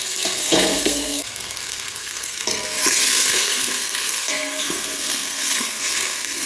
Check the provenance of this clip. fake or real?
fake